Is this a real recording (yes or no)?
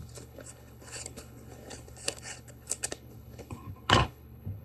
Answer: no